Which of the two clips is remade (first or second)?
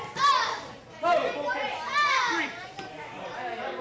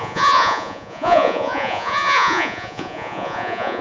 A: second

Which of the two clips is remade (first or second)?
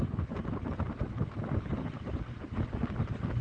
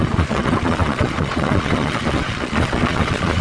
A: second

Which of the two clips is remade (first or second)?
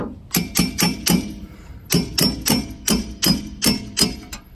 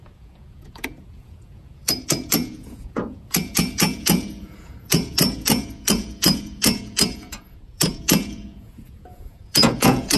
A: second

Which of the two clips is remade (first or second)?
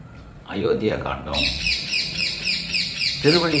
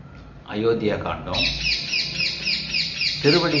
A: first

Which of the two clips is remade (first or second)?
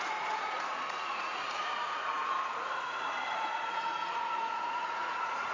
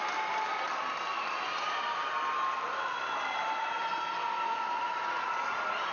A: first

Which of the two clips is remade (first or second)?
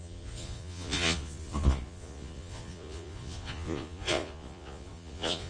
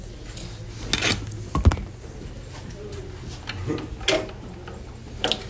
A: first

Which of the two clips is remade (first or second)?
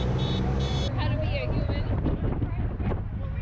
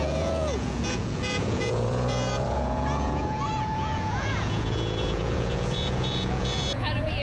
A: second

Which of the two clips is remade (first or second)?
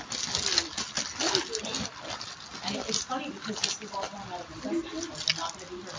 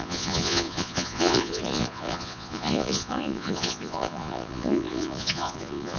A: second